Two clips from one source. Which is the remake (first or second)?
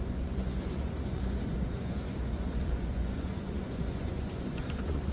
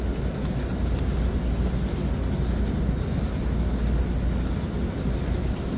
first